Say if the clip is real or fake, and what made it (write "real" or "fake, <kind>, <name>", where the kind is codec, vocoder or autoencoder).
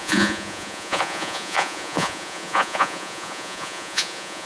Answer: fake, vocoder, Vocos